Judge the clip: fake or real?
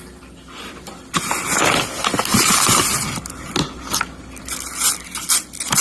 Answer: real